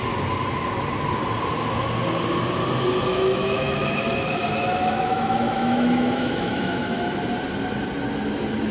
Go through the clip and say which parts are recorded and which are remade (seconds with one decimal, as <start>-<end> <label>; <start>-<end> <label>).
0.0-3.1 recorded; 3.1-7.1 remade; 7.1-8.7 recorded